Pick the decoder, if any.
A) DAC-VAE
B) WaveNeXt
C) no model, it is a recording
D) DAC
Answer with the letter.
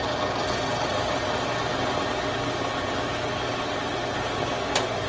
C